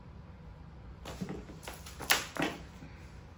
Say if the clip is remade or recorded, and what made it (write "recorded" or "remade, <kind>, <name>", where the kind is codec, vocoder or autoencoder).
recorded